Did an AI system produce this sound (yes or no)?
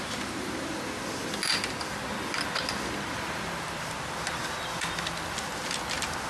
no